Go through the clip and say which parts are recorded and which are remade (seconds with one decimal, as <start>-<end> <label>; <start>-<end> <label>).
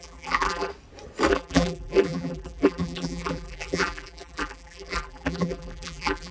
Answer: 0.0-0.7 remade; 0.7-1.3 recorded; 1.3-6.3 remade